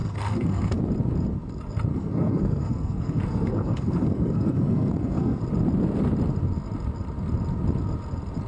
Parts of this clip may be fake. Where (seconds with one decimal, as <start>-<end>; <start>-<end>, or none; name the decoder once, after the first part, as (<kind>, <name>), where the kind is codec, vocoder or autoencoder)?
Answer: 0.0-0.8 (codec, SNAC); 1.9-5.4